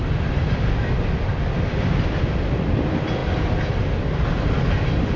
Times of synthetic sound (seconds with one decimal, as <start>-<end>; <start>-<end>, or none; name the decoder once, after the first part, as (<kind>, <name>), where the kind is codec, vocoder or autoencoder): none